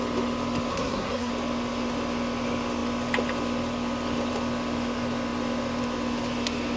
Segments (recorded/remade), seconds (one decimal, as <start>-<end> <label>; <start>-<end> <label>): 0.0-0.7 recorded; 0.7-1.3 remade; 1.3-6.8 recorded